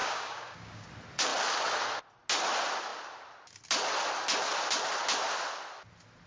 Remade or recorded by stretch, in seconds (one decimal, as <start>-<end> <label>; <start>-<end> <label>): 0.0-0.9 remade; 0.9-6.3 recorded